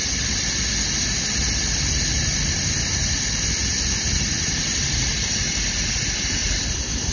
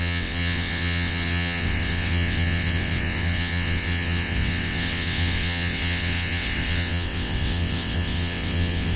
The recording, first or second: first